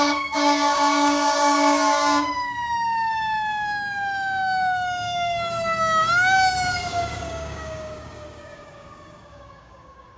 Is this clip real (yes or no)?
no